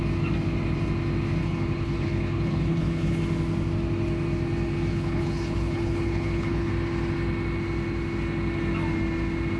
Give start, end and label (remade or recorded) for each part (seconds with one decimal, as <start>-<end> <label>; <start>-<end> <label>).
0.0-1.4 recorded; 1.4-3.2 remade; 3.2-4.9 recorded; 4.9-6.7 remade; 6.7-9.6 recorded